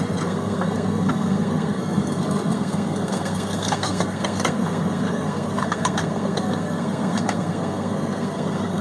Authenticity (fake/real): fake